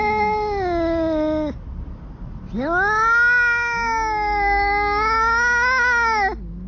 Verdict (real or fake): real